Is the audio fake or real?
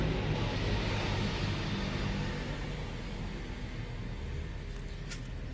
real